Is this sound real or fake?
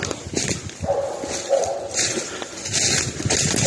real